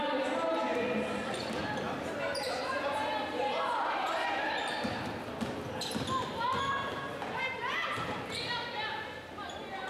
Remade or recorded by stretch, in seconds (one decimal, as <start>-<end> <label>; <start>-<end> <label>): 0.0-1.6 remade; 1.6-2.4 recorded; 2.4-9.9 remade